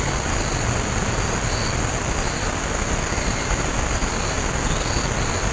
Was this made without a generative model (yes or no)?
yes